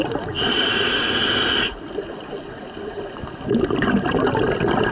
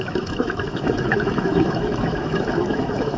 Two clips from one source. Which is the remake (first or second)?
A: second